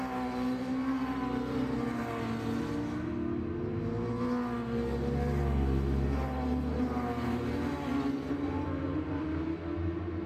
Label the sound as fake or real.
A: real